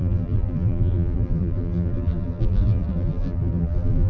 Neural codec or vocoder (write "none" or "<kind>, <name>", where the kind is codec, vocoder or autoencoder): vocoder, BigVGAN v2